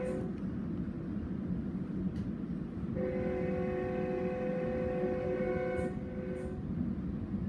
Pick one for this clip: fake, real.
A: real